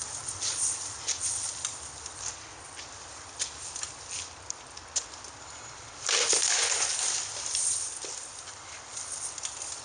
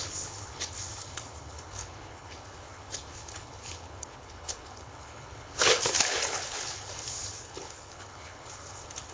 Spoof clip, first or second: second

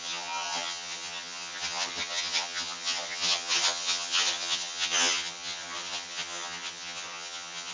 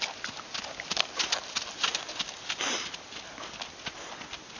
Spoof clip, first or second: first